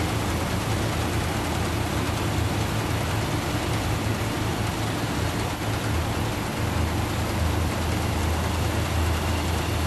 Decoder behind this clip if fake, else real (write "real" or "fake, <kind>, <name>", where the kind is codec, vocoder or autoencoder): real